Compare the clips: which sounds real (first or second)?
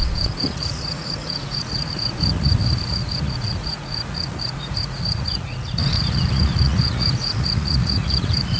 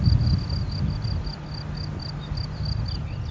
second